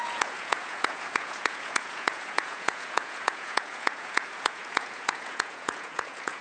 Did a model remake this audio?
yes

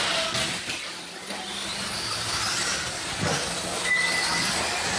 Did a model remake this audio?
no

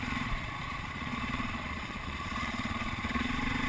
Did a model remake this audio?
yes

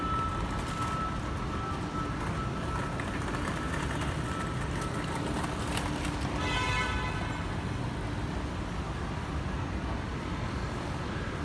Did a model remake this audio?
no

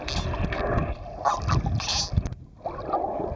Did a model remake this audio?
no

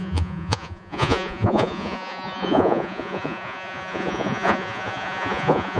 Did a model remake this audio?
yes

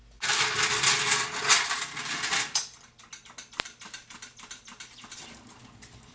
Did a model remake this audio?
no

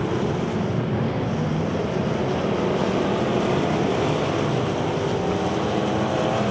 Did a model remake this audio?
no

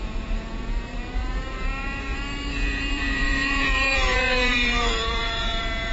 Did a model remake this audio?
yes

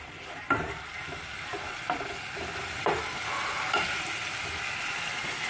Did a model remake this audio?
no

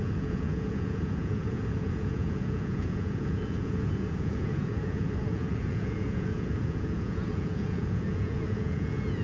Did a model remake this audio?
yes